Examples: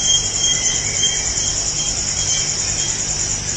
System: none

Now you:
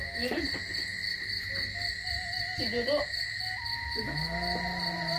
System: none